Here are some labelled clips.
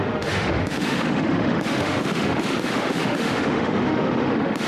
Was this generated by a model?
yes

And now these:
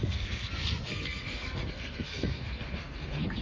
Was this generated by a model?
yes